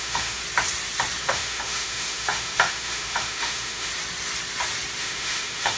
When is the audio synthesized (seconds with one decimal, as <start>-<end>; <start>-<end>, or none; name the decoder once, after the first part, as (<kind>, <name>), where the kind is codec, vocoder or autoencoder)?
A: 0.0-0.4 (autoencoder, DAC-VAE); 1.2-3.9; 5.0-5.8